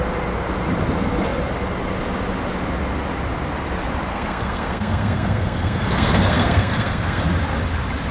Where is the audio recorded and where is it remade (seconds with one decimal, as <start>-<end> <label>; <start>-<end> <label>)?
0.0-4.1 recorded; 4.1-7.2 remade; 7.2-8.1 recorded

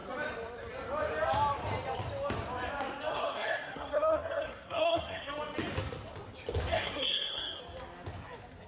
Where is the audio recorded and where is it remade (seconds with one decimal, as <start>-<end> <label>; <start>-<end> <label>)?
0.0-3.1 recorded; 3.1-5.3 remade; 5.3-6.7 recorded; 6.7-7.6 remade; 7.6-8.7 recorded

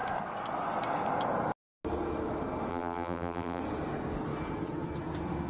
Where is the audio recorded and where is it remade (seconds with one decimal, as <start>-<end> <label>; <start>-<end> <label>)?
0.0-2.7 recorded; 2.7-3.6 remade; 3.6-5.5 recorded